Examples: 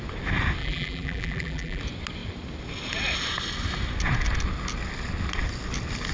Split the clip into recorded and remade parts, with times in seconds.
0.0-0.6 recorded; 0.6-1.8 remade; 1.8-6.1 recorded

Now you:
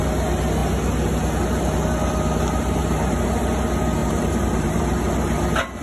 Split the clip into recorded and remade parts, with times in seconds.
0.0-4.0 recorded; 4.0-4.9 remade; 4.9-5.8 recorded

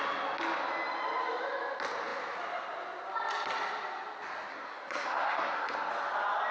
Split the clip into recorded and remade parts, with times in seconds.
0.0-4.5 recorded; 4.5-5.9 remade; 5.9-6.5 recorded

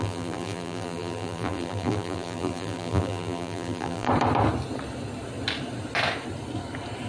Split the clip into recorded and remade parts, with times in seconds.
0.0-4.1 remade; 4.1-7.1 recorded

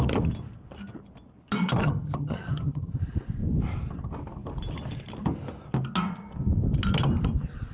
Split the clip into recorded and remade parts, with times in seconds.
0.0-1.8 recorded; 1.8-3.0 remade; 3.0-7.7 recorded